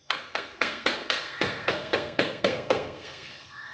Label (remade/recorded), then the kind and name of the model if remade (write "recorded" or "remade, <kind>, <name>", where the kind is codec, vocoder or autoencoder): remade, codec, SNAC